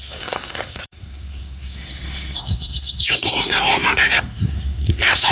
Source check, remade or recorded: remade